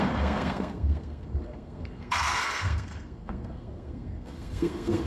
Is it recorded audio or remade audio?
remade